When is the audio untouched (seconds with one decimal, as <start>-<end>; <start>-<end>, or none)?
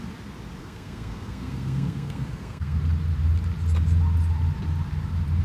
0.0-0.6; 2.8-5.4